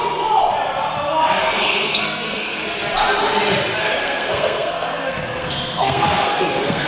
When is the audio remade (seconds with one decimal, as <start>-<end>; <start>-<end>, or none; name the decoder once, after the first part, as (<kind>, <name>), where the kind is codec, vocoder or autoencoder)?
1.4-2.6 (codec, SNAC); 3.8-6.9